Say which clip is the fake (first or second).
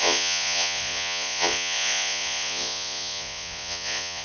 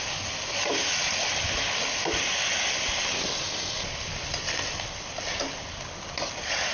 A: first